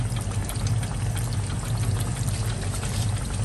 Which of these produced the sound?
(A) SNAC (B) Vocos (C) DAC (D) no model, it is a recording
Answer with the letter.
D